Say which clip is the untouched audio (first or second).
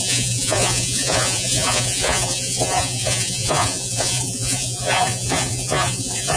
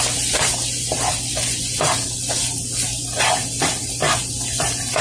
second